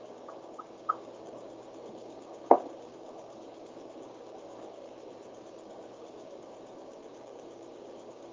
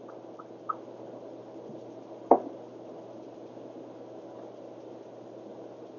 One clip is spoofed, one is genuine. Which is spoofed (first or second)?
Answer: first